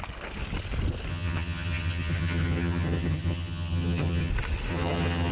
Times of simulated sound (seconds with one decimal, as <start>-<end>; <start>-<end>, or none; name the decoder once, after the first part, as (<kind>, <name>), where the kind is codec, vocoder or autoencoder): 1.1-4.3 (vocoder, HiFi-GAN); 4.7-5.3